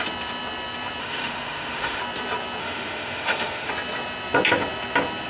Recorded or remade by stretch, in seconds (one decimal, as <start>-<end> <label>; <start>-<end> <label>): 0.0-1.0 recorded; 1.0-2.0 remade; 2.0-2.6 recorded; 2.6-3.7 remade; 3.7-5.3 recorded